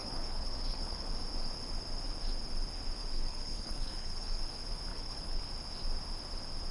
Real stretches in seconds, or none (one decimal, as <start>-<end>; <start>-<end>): 1.1-3.0; 4.4-4.9; 5.4-6.7